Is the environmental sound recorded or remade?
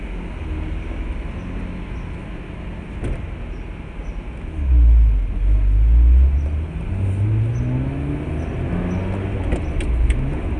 recorded